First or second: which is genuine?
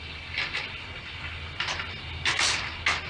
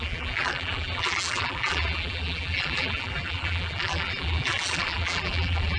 first